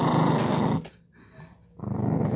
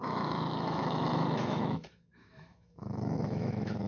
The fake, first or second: second